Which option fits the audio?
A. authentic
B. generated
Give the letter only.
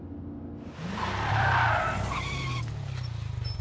A